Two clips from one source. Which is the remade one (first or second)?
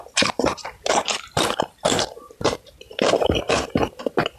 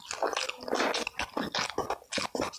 first